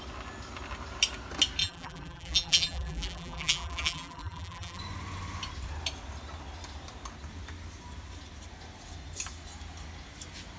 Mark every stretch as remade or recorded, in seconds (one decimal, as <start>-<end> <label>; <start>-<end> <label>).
0.0-1.6 recorded; 1.6-4.8 remade; 4.8-10.6 recorded